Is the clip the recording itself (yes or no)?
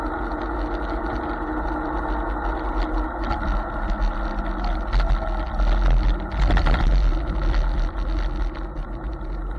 yes